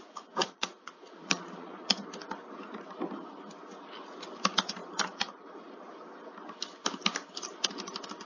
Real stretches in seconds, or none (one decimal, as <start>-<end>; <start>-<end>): 0.0-0.4; 1.9-8.3